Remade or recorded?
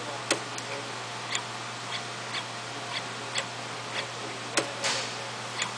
recorded